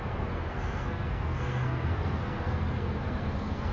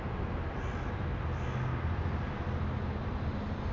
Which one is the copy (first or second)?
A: first